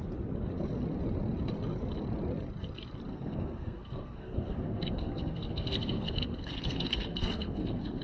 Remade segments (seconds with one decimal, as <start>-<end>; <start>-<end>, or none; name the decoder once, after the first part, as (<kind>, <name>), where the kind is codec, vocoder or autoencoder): 3.1-8.0 (codec, SNAC)